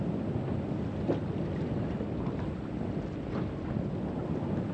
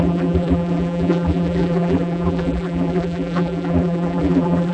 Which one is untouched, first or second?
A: first